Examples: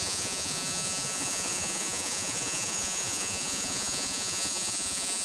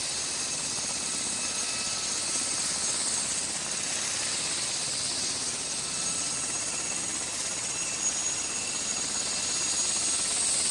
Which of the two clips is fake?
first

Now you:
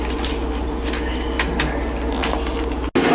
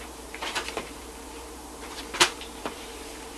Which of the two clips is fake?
second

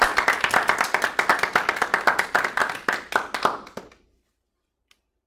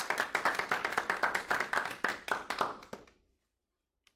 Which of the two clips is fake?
second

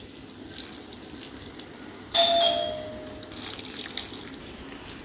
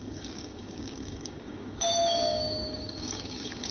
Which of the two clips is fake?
second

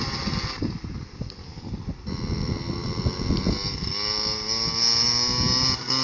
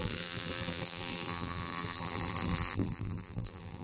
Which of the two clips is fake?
second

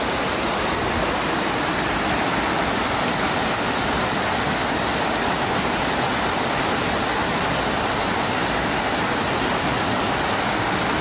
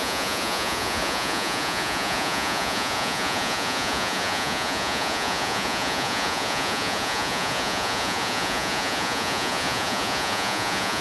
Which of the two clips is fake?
second